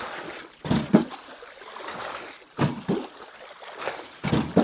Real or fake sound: real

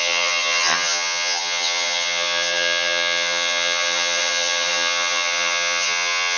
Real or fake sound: fake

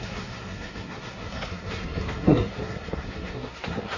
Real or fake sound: fake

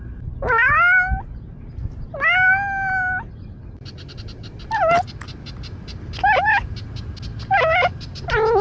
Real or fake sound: real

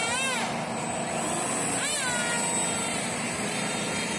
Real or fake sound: real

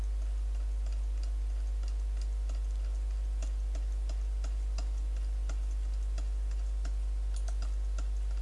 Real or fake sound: real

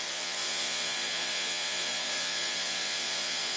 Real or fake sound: fake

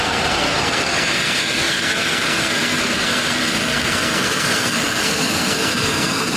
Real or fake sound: fake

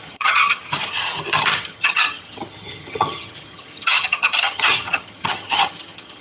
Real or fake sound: fake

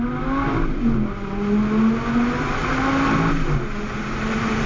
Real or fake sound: real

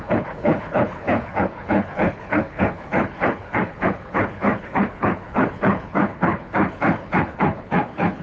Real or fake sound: fake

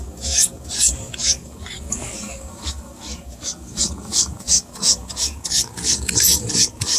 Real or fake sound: fake